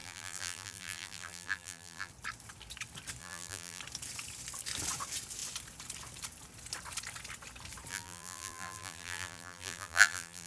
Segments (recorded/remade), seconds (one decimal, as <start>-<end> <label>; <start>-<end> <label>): 0.0-2.1 remade; 2.1-3.2 recorded; 3.2-3.8 remade; 3.8-7.9 recorded; 7.9-10.5 remade